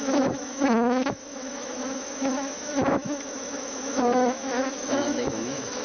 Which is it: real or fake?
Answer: fake